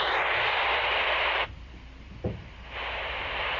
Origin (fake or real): fake